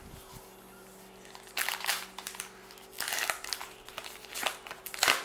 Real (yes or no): yes